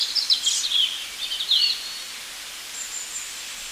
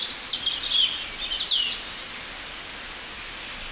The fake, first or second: first